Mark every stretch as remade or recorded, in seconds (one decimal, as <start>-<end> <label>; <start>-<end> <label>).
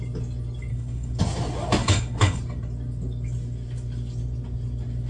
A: 0.0-0.7 recorded; 0.7-1.2 remade; 1.2-1.8 recorded; 1.8-2.4 remade; 2.4-5.1 recorded